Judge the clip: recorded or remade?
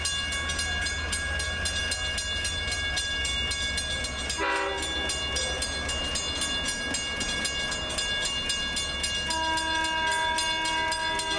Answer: recorded